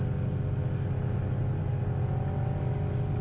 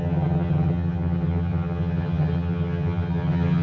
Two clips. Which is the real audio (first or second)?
first